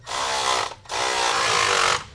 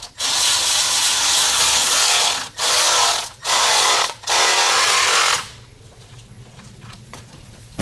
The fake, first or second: second